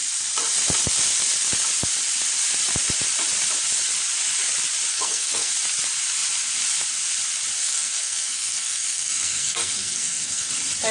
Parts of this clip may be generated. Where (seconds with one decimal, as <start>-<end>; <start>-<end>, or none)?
4.9-5.5; 7.6-10.5